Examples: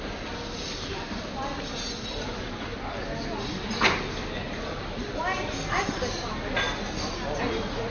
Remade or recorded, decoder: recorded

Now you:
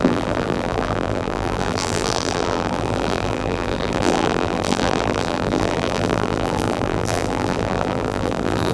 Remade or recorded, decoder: remade, vocoder, BigVGAN v2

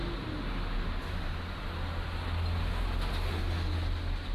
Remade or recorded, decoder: recorded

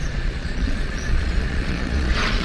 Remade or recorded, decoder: remade, vocoder, Vocos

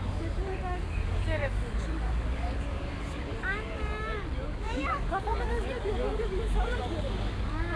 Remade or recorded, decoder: remade, codec, DAC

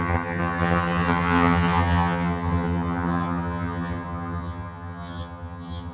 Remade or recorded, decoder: remade, vocoder, HiFi-GAN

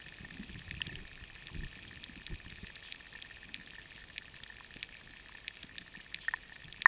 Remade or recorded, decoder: recorded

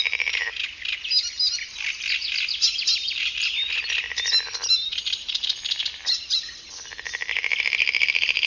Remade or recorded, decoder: recorded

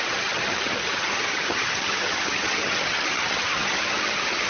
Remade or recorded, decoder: remade, vocoder, HiFi-GAN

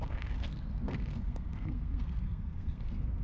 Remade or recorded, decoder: remade, codec, SNAC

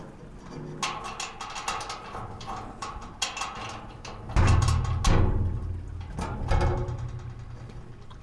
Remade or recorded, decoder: recorded